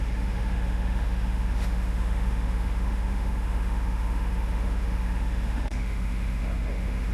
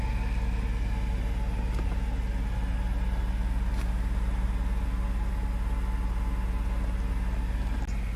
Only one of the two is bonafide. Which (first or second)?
second